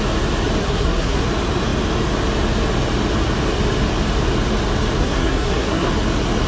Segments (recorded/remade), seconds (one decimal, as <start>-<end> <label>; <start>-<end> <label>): 0.0-0.6 recorded; 0.6-1.2 remade; 1.2-5.0 recorded; 5.0-5.9 remade; 5.9-6.5 recorded